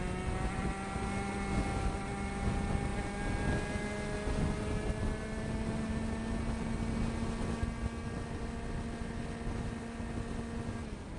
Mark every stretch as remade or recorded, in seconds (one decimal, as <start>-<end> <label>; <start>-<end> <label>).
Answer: 0.0-11.2 recorded